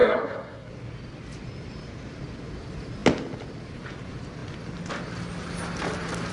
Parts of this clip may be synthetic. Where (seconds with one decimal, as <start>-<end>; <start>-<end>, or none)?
0.0-0.7